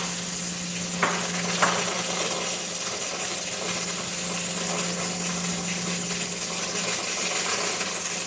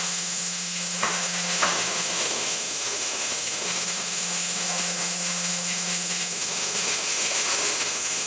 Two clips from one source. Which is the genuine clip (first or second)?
first